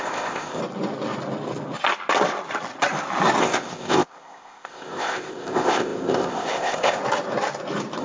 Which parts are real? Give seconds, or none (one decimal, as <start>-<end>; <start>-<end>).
0.6-3.4; 7.0-8.0